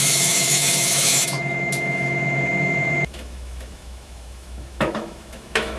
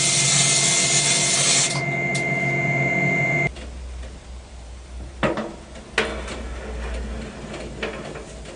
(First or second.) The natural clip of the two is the second